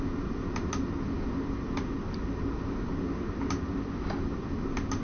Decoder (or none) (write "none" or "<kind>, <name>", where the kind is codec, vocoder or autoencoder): none